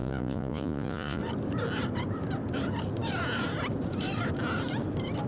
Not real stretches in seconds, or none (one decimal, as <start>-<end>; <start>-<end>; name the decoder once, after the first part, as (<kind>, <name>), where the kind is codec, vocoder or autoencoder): 0.0-1.2 (vocoder, Vocos)